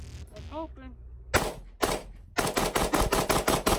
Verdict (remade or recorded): recorded